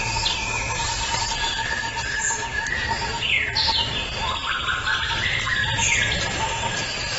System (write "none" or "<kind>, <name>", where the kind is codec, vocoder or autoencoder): none